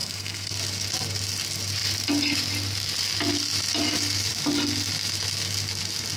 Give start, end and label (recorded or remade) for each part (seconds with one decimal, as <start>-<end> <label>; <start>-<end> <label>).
0.0-0.5 remade; 0.5-6.2 recorded